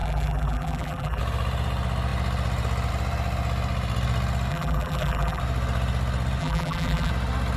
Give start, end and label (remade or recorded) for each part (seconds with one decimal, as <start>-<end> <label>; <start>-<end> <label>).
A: 0.0-1.2 remade; 1.2-4.5 recorded; 4.5-5.4 remade; 5.4-6.4 recorded; 6.4-7.1 remade; 7.1-7.6 recorded